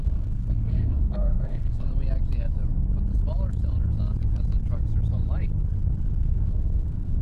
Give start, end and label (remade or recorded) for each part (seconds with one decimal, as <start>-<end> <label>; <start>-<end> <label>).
0.0-1.9 remade; 1.9-6.2 recorded; 6.2-7.2 remade